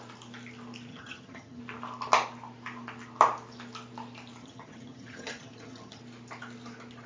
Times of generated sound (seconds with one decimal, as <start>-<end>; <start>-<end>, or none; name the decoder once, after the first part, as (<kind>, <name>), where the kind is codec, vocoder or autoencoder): 0.9-1.6 (vocoder, HiFi-GAN); 4.4-6.0